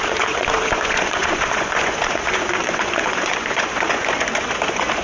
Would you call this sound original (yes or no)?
no